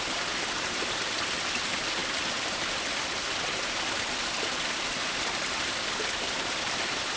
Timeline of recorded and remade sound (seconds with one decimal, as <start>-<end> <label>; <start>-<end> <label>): 0.0-7.2 remade

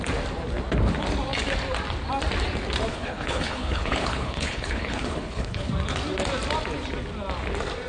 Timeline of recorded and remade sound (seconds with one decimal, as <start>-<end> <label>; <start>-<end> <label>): 0.0-2.9 recorded; 2.9-5.7 remade; 5.7-7.9 recorded

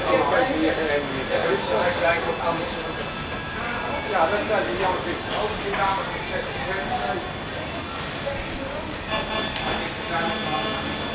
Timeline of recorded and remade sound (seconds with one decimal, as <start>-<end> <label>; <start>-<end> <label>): 0.0-11.1 recorded

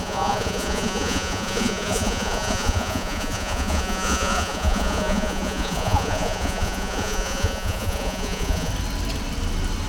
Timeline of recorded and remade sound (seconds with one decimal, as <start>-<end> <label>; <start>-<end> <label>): 0.0-8.7 remade; 8.7-9.9 recorded

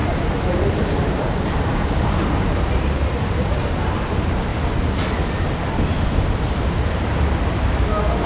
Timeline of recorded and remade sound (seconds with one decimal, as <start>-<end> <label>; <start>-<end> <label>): 0.0-4.5 remade; 4.5-6.4 recorded; 6.4-8.3 remade

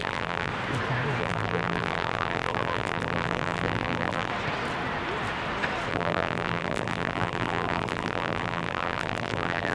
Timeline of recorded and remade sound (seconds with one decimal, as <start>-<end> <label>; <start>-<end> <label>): 0.0-0.5 remade; 0.5-1.2 recorded; 1.2-4.3 remade; 4.3-5.9 recorded; 5.9-9.7 remade

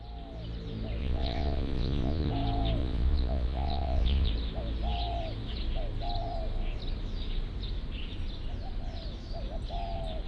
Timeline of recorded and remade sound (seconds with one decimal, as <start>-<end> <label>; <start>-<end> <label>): 0.0-1.0 recorded; 1.0-2.3 remade; 2.3-2.8 recorded; 2.8-4.3 remade; 4.3-10.3 recorded